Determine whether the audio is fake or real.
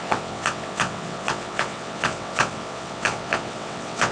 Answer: fake